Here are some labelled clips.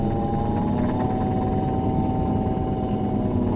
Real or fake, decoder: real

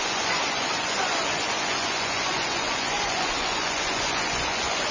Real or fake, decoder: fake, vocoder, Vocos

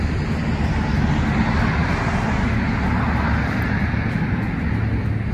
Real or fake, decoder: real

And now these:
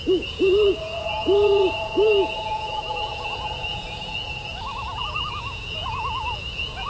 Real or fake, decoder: fake, vocoder, Vocos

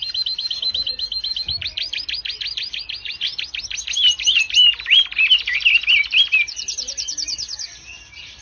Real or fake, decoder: real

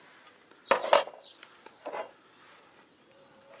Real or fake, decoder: real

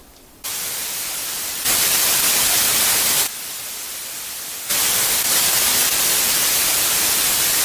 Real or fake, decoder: fake, vocoder, BigVGAN v2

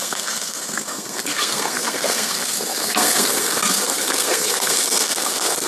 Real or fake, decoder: fake, codec, SNAC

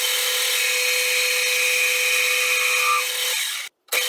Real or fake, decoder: real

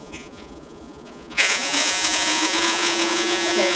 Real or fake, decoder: fake, vocoder, Vocos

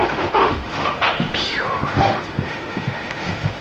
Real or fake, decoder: fake, autoencoder, DAC-VAE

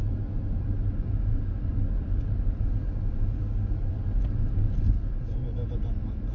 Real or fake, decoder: real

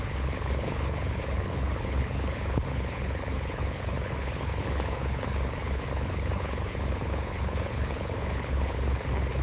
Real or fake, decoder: fake, codec, HILCodec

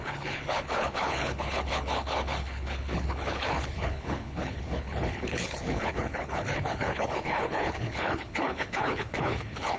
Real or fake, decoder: fake, codec, HILCodec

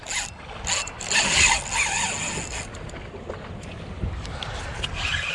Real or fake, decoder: real